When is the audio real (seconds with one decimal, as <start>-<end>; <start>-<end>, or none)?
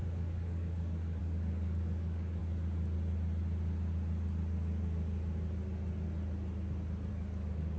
2.4-7.1